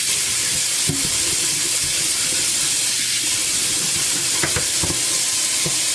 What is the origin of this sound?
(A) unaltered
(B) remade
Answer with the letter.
A